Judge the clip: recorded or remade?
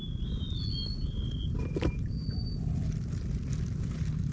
recorded